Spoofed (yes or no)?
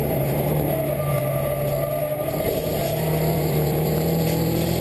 yes